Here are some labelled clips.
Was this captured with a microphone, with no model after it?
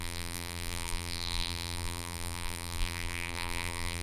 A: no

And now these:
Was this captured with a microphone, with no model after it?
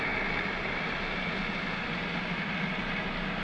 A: yes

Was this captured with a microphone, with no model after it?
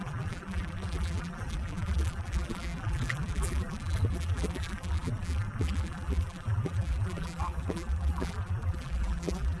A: no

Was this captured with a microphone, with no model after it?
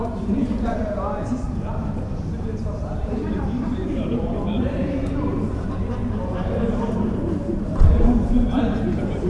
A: no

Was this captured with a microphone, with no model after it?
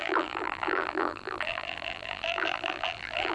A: no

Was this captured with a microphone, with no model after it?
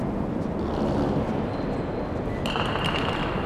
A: yes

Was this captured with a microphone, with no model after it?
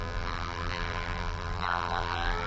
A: no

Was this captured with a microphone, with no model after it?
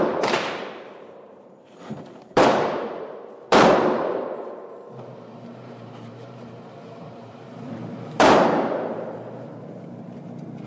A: no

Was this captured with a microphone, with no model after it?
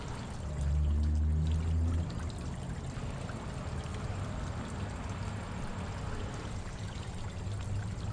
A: yes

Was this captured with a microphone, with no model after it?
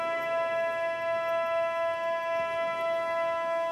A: yes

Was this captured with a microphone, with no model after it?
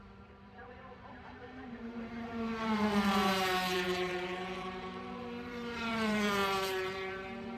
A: no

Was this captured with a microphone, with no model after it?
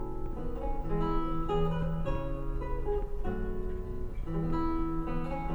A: yes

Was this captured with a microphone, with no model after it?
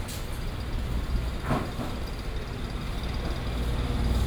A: yes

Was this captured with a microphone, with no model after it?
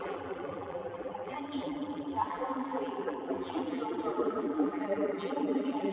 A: no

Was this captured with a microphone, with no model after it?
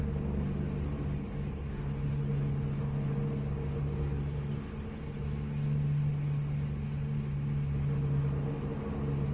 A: yes